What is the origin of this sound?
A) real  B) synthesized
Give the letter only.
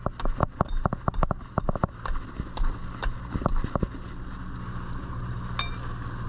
A